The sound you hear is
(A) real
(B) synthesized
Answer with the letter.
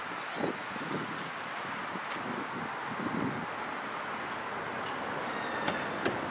A